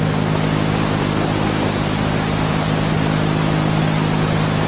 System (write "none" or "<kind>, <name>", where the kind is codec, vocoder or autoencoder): none